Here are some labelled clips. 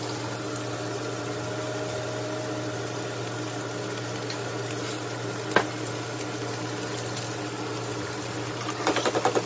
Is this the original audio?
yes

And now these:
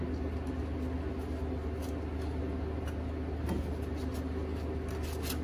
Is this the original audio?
yes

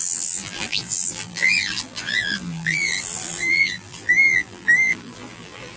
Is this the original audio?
no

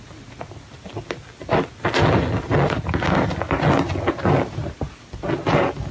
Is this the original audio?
yes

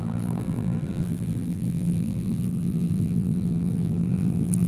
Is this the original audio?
no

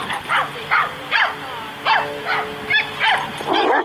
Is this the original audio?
yes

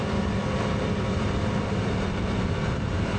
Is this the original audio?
no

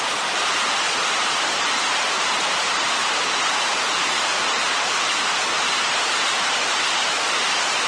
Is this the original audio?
no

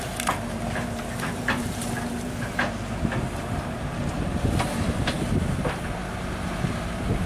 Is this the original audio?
no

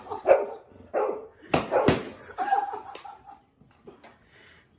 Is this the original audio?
yes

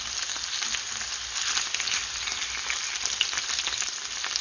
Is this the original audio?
yes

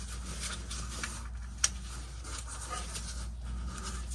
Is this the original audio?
yes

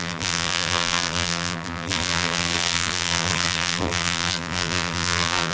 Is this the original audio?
no